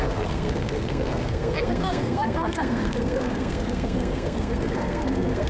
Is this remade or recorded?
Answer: remade